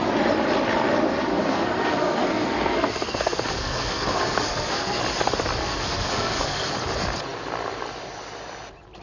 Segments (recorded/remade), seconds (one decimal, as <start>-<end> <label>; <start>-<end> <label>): 0.0-1.3 recorded; 1.3-5.0 remade; 5.0-5.6 recorded; 5.6-6.7 remade; 6.7-9.0 recorded

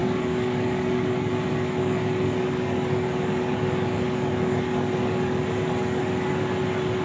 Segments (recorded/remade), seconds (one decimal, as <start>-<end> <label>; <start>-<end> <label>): 0.0-1.3 remade; 1.3-1.8 recorded; 1.8-6.0 remade; 6.0-7.0 recorded

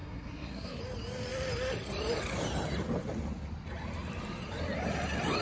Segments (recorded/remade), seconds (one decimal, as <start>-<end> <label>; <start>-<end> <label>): 0.0-0.8 remade; 0.8-5.4 recorded

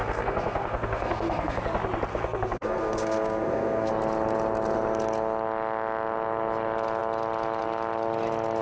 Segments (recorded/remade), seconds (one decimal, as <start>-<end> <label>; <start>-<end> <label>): 0.0-1.6 remade; 1.6-2.1 recorded; 2.1-3.9 remade; 3.9-8.6 recorded

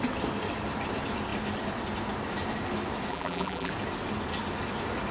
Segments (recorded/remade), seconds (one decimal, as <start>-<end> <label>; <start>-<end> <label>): 0.0-3.1 recorded; 3.1-3.7 remade; 3.7-5.1 recorded

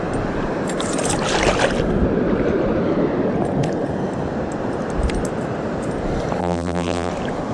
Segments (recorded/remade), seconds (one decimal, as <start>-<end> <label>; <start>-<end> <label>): 0.0-6.4 recorded; 6.4-7.1 remade; 7.1-7.5 recorded